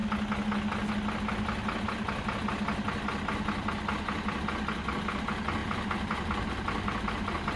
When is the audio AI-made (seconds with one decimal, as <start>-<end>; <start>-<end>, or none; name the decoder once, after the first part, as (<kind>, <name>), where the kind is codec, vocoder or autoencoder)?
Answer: none

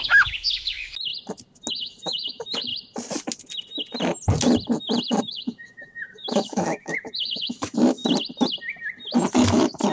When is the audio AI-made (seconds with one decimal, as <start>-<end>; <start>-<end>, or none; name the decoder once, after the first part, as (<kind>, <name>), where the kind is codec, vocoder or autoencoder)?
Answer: 0.0-1.1 (autoencoder, DAC-VAE); 1.7-2.7; 5.2-8.0; 9.3-9.9